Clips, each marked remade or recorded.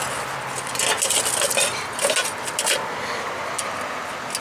recorded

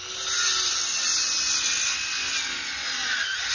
recorded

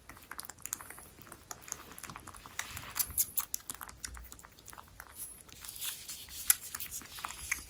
recorded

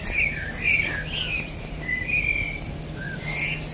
recorded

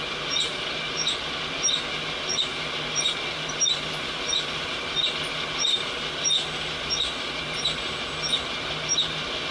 recorded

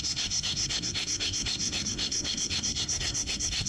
remade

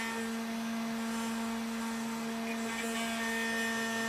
recorded